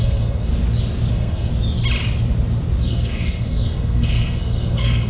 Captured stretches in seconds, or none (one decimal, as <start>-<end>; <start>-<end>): 0.5-1.1; 1.5-2.8